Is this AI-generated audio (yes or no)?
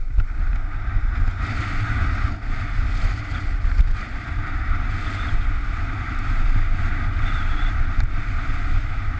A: no